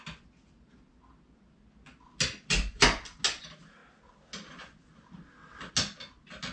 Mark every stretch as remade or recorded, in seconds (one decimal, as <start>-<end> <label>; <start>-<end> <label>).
0.0-6.5 recorded